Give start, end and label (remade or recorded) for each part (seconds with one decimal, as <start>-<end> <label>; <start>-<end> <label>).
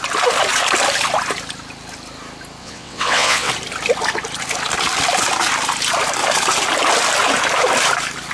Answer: 0.0-2.6 recorded; 2.6-3.5 remade; 3.5-8.3 recorded